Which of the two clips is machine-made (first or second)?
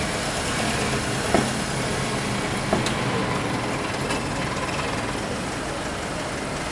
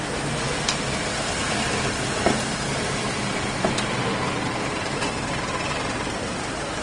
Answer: second